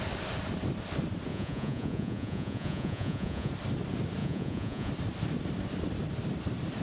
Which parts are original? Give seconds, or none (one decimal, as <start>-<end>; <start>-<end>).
0.0-1.3; 3.5-4.2; 4.9-6.8